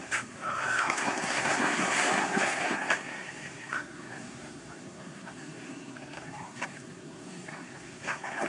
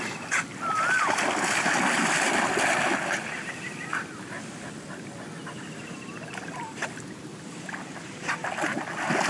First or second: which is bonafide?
second